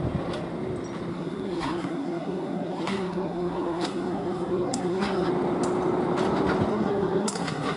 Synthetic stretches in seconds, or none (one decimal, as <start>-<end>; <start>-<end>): 1.1-5.3; 6.7-7.8

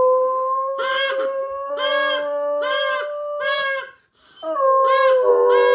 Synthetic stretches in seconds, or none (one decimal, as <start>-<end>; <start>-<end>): none

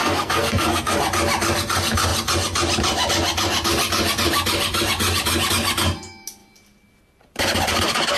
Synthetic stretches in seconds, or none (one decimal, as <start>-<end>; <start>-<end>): 0.0-1.0

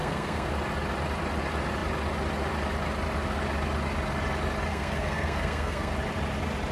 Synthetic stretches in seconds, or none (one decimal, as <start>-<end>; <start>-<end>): 0.0-0.5; 4.7-5.9

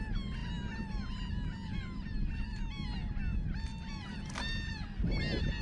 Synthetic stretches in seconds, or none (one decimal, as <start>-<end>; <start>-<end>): none

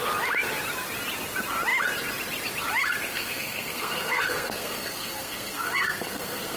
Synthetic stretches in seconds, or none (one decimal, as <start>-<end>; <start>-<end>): 3.1-6.6

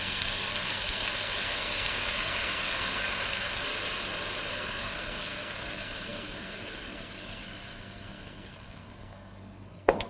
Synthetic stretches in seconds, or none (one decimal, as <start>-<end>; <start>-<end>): 0.0-3.7; 4.5-10.1